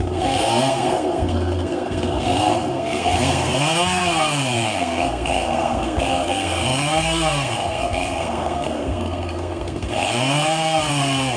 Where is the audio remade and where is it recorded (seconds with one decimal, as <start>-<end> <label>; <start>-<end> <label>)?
0.0-11.4 remade